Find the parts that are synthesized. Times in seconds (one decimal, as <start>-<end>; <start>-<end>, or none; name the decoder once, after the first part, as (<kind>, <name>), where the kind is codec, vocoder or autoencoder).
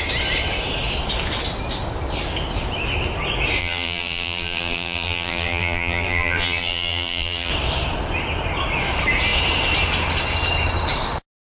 3.6-7.5 (vocoder, BigVGAN v2)